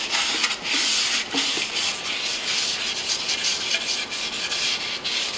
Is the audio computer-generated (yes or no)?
no